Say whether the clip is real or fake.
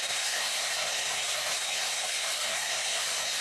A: fake